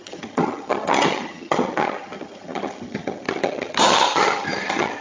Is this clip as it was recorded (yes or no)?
no